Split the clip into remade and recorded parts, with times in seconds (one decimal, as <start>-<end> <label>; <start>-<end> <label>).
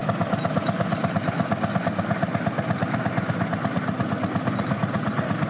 0.0-5.5 recorded